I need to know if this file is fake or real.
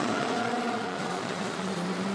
fake